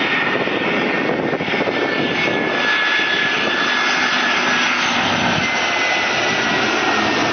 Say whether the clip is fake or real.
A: real